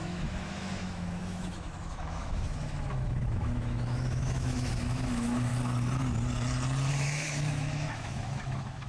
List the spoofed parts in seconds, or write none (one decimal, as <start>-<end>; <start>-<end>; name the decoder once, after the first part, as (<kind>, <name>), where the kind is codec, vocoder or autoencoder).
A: 0.0-5.5 (autoencoder, DAC-VAE); 6.9-8.9